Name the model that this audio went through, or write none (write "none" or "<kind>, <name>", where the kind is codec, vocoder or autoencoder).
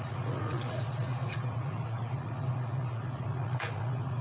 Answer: vocoder, Vocos